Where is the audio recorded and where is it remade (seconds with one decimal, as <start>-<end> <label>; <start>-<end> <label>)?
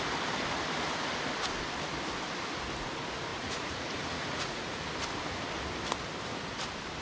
0.0-3.3 recorded; 3.3-4.8 remade; 4.8-7.0 recorded